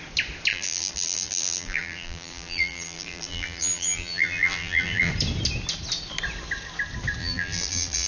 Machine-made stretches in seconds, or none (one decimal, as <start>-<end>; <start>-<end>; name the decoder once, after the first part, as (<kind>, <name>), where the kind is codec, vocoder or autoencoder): 0.5-5.1 (vocoder, BigVGAN v2); 7.2-8.1